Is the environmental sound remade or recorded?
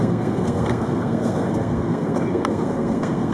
remade